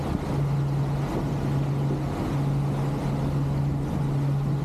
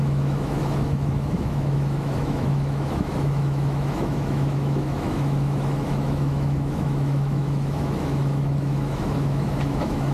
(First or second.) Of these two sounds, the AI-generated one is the second